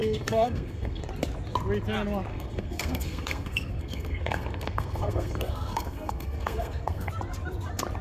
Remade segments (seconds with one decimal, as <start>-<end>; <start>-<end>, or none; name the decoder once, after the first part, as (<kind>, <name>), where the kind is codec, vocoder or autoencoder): 0.0-1.0 (codec, SNAC); 2.3-7.1